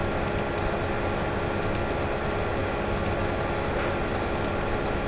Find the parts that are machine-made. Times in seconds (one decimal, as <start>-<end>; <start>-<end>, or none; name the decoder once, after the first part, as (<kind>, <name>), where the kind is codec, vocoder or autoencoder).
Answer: none